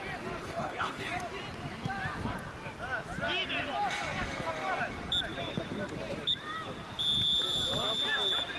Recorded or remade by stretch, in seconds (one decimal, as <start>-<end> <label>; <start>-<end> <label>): 0.0-0.4 recorded; 0.4-1.1 remade; 1.1-8.6 recorded